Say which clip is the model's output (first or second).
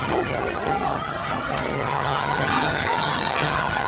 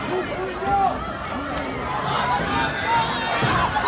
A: first